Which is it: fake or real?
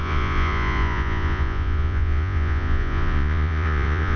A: fake